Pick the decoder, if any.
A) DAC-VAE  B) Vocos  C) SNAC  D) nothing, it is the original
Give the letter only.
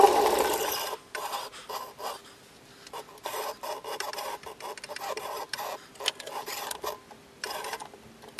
D